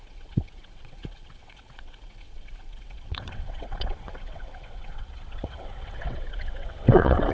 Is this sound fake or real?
fake